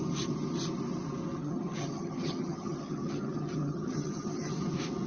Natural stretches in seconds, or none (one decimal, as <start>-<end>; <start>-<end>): 0.0-1.4; 4.5-5.1